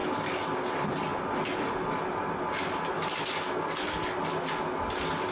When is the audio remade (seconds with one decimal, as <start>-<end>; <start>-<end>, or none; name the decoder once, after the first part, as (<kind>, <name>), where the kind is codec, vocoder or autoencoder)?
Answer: none